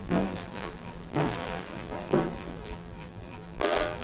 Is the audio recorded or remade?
remade